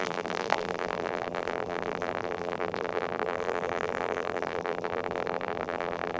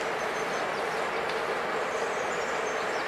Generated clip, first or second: first